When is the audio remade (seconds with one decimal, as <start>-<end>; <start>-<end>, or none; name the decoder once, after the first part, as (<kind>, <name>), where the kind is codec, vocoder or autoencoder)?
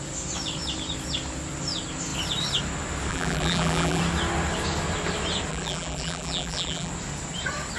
3.1-4.0 (vocoder, BigVGAN v2); 5.5-6.9